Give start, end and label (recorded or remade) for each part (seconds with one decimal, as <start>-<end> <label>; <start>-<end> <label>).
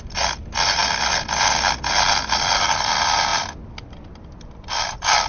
0.0-5.3 recorded